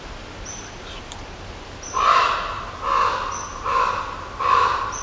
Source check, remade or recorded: recorded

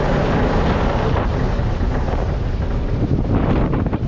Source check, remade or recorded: recorded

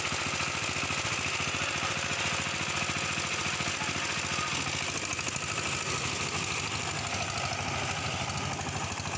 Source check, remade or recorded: recorded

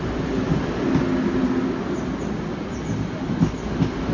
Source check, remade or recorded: recorded